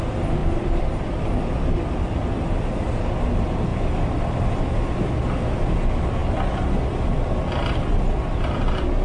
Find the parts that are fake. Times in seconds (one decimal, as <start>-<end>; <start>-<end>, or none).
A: none